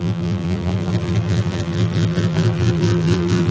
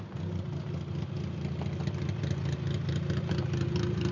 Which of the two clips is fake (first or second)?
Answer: first